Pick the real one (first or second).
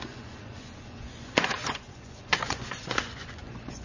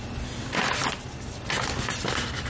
second